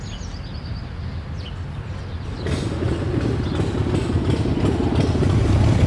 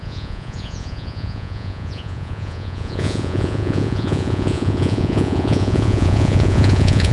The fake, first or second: second